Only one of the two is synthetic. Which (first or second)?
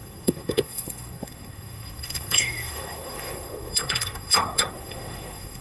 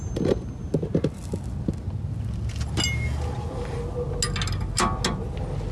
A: first